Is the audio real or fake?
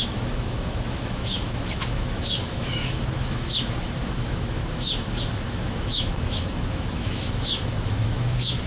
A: fake